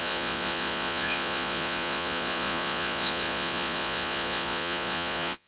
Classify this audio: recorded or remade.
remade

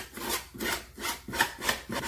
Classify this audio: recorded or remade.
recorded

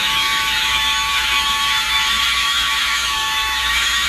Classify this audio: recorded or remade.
remade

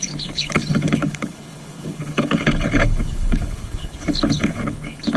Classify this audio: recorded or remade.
remade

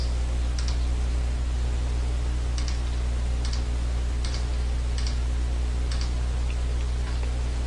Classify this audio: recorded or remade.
recorded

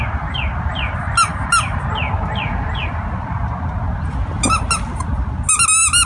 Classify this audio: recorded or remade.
recorded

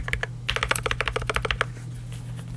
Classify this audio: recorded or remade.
recorded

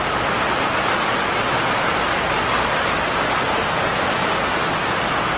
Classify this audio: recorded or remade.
recorded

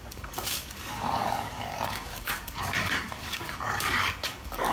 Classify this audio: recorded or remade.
remade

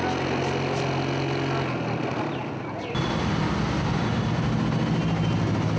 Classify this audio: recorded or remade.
recorded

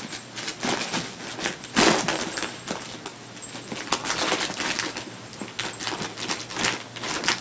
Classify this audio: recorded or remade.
recorded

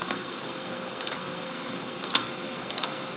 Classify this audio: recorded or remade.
remade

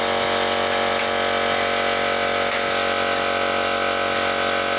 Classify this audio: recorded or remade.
recorded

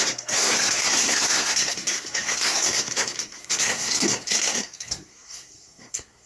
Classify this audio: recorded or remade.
remade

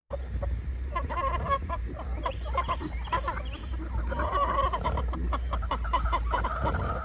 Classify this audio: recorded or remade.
remade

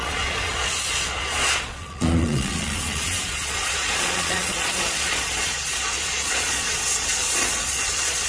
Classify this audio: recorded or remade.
remade